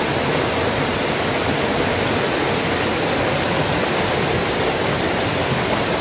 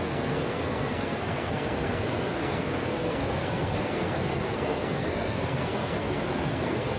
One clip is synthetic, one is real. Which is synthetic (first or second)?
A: second